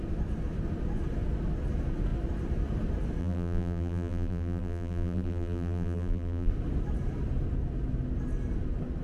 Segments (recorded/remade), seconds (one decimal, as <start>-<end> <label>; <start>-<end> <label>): 0.0-3.2 recorded; 3.2-6.5 remade; 6.5-9.0 recorded